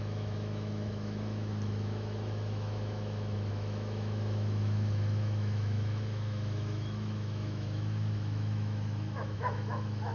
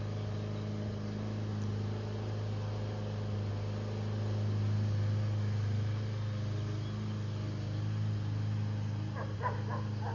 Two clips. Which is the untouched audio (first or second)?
second